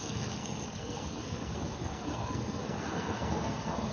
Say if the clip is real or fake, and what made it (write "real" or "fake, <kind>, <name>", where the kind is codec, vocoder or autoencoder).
fake, codec, SNAC